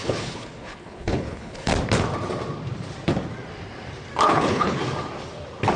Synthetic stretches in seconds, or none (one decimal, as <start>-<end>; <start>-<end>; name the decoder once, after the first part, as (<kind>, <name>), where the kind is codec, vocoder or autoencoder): 0.0-1.7 (codec, HILCodec); 4.2-4.8